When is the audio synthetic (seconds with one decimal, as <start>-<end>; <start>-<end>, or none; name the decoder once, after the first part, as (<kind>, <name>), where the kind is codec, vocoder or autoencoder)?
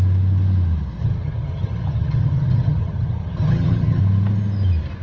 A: 1.0-4.0 (vocoder, HiFi-GAN)